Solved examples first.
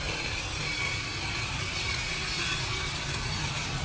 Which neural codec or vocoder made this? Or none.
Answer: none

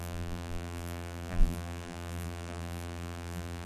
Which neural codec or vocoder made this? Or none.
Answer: vocoder, BigVGAN v2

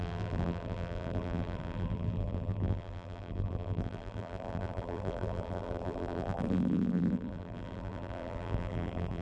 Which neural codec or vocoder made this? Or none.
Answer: vocoder, BigVGAN v2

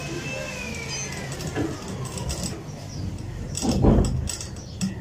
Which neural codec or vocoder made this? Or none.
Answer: none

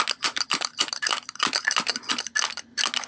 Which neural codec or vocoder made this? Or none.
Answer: none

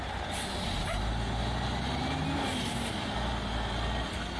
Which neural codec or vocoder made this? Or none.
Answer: none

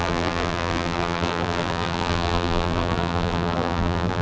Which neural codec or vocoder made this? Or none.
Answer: vocoder, BigVGAN v2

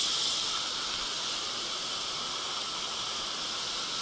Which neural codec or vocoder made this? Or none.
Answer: none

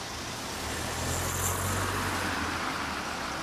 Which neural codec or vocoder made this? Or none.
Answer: none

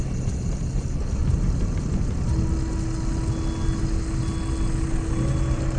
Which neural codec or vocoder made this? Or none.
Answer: none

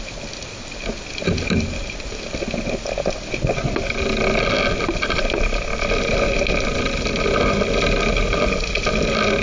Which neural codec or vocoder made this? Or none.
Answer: none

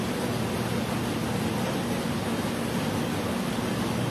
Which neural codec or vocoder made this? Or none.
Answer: none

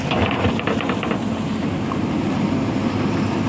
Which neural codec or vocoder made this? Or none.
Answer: none